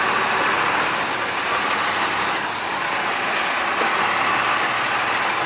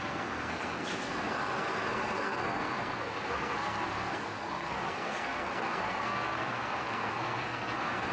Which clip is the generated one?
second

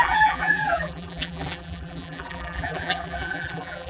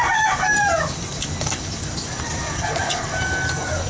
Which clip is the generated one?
first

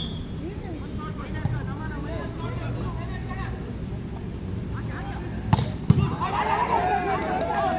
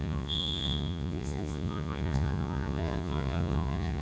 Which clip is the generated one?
second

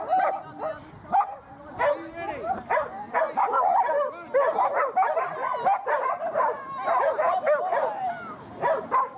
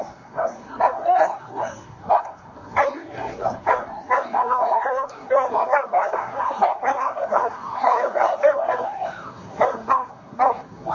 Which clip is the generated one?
second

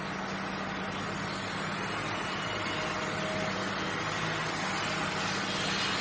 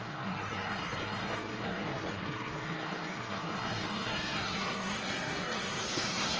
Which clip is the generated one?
second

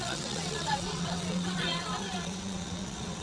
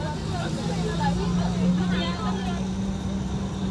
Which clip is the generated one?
first